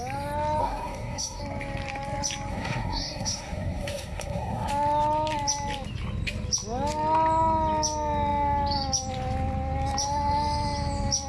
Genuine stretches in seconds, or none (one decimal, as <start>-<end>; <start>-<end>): 0.0-0.6; 1.4-2.5; 4.7-11.3